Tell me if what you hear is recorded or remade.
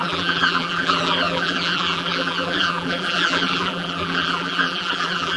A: remade